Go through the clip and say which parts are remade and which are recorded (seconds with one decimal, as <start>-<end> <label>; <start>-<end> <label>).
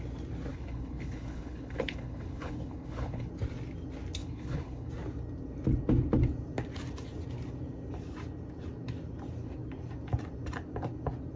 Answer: 0.0-0.5 recorded; 0.5-3.3 remade; 3.3-4.2 recorded; 4.2-4.9 remade; 4.9-11.4 recorded